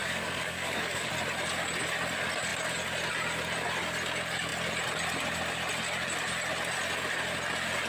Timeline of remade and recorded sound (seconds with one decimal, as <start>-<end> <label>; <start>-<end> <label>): 0.0-1.1 remade; 1.1-7.9 recorded